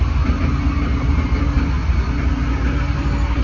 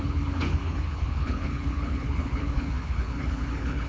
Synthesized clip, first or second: second